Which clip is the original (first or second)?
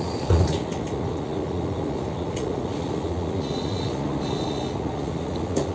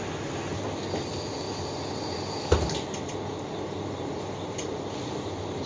second